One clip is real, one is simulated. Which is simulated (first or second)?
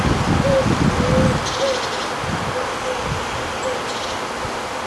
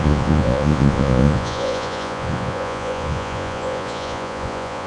second